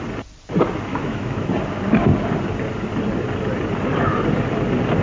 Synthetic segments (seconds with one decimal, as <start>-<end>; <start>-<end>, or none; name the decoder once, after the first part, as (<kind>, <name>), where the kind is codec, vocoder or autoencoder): 0.9-1.5 (autoencoder, DAC-VAE)